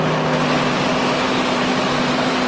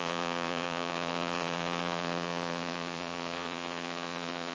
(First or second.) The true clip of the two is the first